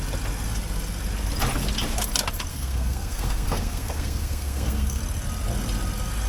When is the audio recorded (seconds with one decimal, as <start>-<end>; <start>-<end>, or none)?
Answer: 0.0-2.5; 5.0-6.3